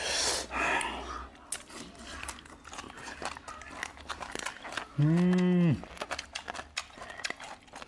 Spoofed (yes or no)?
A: no